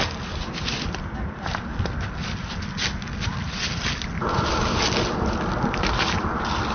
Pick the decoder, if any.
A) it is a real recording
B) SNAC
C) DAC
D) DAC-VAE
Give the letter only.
A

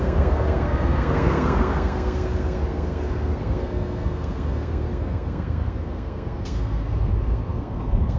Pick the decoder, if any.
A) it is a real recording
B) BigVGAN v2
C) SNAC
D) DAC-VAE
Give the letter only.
C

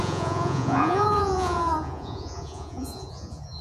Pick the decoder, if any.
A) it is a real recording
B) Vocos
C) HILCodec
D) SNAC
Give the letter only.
B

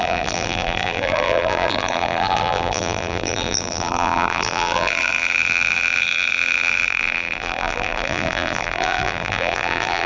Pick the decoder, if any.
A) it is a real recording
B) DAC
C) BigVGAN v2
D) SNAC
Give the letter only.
C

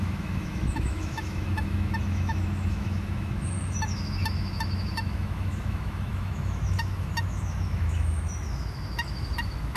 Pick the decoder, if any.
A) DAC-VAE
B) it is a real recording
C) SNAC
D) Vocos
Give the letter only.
A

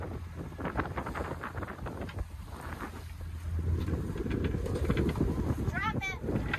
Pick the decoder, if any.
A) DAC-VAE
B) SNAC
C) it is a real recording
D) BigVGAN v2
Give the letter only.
C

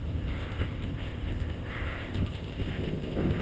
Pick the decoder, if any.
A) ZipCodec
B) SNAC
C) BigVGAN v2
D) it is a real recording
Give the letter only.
A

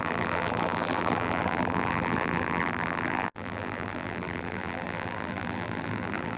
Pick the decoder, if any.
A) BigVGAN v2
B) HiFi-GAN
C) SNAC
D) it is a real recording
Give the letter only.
A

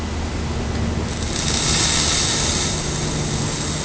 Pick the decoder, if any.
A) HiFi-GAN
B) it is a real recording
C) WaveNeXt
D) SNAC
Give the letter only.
B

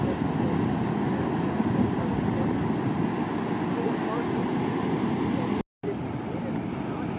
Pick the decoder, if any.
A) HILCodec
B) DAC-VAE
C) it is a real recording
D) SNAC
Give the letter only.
C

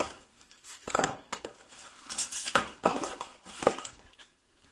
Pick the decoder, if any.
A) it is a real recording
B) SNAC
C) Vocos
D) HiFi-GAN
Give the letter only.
B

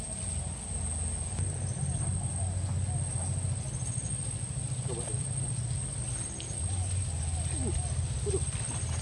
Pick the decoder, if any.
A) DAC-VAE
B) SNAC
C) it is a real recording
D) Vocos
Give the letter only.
C